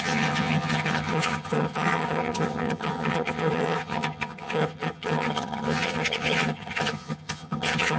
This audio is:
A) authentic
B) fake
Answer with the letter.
B